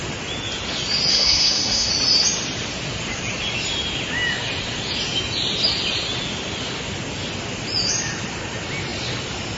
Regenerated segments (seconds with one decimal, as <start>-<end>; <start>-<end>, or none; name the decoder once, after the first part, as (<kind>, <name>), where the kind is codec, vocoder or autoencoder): 1.1-1.9 (codec, SNAC)